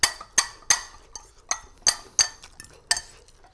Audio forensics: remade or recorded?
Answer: recorded